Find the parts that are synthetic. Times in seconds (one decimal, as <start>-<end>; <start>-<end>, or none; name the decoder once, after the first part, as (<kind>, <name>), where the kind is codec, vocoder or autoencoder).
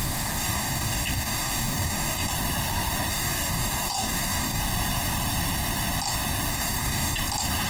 0.0-2.3 (codec, DAC); 3.1-4.6; 6.5-7.2